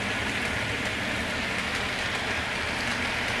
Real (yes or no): yes